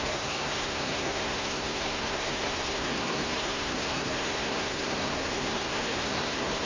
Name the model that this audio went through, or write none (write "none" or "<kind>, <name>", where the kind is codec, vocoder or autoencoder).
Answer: codec, SNAC